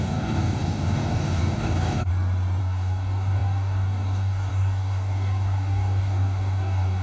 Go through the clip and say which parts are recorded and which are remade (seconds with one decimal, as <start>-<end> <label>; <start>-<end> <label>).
0.0-2.1 remade; 2.1-2.6 recorded; 2.6-7.0 remade